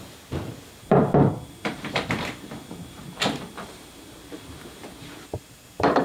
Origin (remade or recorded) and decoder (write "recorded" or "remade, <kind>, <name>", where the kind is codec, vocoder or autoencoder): remade, vocoder, BigVGAN v2